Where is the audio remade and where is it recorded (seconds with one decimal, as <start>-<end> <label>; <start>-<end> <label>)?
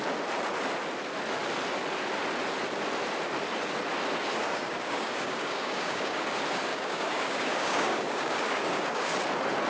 0.0-4.4 recorded; 4.4-6.2 remade; 6.2-6.7 recorded; 6.7-9.2 remade; 9.2-9.7 recorded